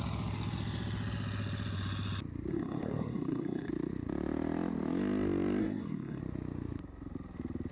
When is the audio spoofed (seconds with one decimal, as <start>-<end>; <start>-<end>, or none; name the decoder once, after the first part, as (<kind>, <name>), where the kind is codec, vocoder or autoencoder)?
2.5-3.7 (codec, SNAC); 5.6-6.2